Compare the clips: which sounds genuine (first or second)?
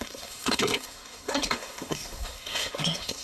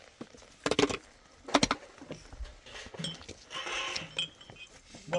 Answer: second